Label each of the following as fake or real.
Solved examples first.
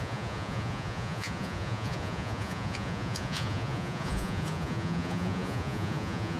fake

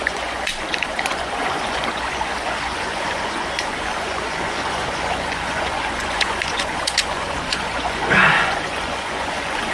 fake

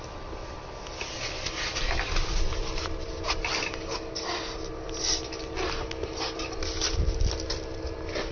real